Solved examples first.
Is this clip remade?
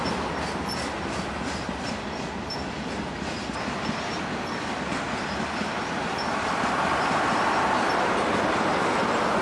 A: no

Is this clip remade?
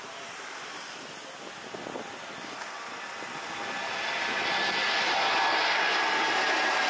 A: no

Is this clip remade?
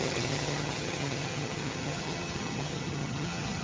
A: yes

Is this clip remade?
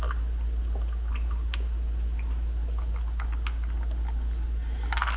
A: no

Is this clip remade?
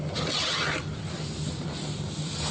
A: no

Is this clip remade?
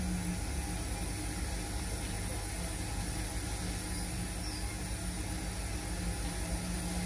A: no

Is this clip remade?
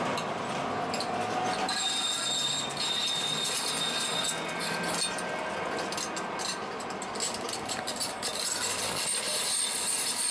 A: no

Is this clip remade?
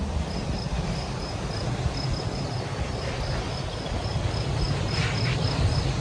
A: no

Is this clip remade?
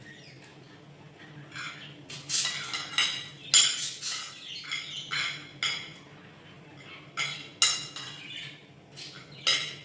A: no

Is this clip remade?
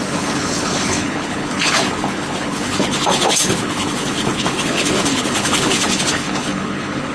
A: yes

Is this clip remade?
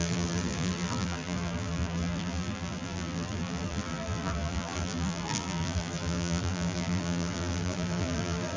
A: yes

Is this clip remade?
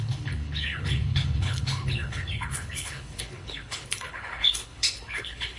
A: yes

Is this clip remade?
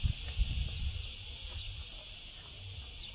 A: no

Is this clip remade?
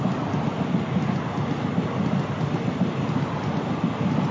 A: no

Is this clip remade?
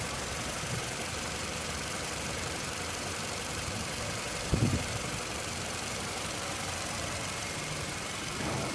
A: yes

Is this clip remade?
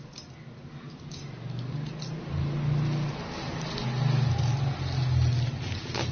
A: no